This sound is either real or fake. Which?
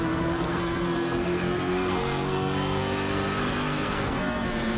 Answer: fake